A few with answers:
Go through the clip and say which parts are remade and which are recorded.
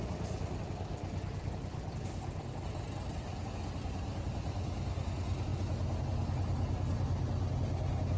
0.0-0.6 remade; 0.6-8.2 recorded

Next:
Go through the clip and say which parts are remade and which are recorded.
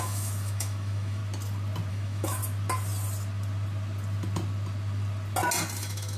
0.0-1.2 remade; 1.2-1.9 recorded; 1.9-2.4 remade; 2.4-5.8 recorded; 5.8-6.2 remade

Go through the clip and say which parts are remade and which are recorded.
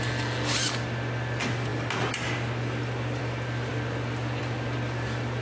0.0-5.4 recorded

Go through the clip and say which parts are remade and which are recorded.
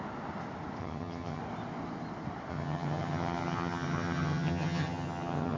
0.0-0.8 recorded; 0.8-1.4 remade; 1.4-2.5 recorded; 2.5-5.6 remade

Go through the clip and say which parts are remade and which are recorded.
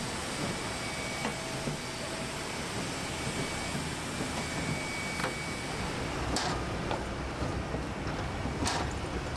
0.0-9.4 recorded